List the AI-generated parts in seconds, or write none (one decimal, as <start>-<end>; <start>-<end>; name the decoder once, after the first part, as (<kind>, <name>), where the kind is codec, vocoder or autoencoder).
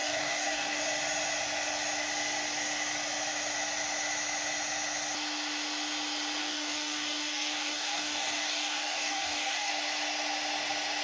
0.0-0.8 (codec, DAC); 6.4-9.7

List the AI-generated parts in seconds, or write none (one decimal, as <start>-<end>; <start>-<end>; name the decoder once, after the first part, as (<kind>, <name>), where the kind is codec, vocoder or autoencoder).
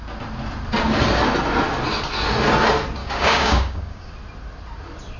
3.0-4.1 (codec, DAC)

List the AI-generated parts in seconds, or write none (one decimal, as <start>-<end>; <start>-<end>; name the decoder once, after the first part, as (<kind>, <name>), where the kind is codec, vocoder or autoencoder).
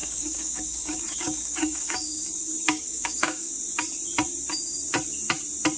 0.0-3.5 (codec, DAC)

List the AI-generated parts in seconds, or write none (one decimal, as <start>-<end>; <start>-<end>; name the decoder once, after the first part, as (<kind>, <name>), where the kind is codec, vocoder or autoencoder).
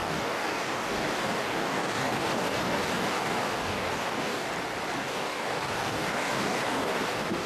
0.0-4.5 (codec, DAC); 5.0-7.5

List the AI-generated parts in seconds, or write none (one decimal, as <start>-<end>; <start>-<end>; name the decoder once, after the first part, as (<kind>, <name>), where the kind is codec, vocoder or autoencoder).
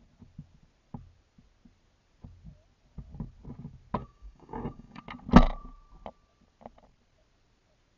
4.0-5.0 (codec, DAC)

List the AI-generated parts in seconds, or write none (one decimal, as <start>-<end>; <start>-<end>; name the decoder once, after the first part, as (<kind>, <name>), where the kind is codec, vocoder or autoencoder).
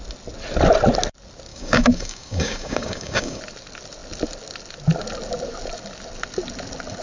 1.5-3.4 (codec, DAC)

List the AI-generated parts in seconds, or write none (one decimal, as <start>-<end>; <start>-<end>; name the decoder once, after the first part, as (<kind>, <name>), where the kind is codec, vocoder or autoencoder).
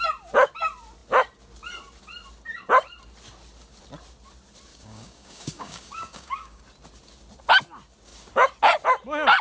4.7-6.6 (codec, DAC)